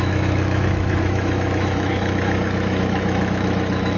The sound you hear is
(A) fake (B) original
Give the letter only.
A